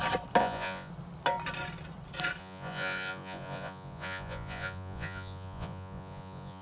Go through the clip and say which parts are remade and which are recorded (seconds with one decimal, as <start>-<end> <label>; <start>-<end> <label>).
0.0-0.4 recorded; 0.4-0.9 remade; 0.9-2.4 recorded; 2.4-6.6 remade